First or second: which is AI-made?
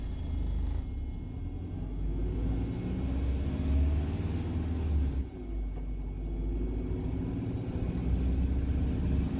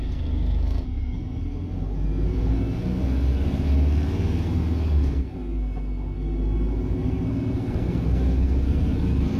second